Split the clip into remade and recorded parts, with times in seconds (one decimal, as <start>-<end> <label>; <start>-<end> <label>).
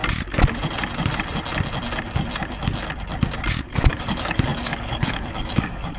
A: 0.0-3.6 recorded; 3.6-6.0 remade